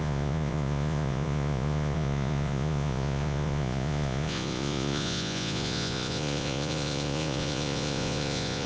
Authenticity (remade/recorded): remade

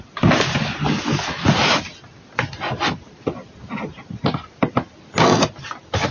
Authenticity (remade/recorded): recorded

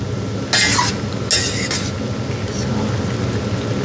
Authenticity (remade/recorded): recorded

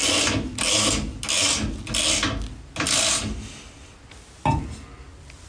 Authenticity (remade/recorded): recorded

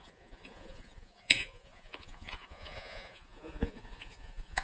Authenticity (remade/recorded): remade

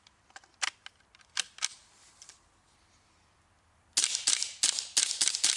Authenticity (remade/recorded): recorded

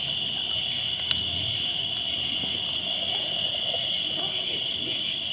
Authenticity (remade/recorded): recorded